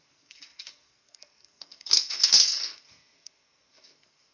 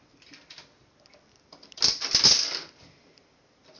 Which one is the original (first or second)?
second